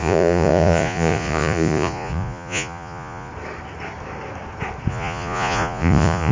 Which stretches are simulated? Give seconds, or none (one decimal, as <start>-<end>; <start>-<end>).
0.0-3.3; 4.9-6.3